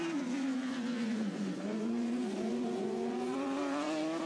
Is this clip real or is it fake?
fake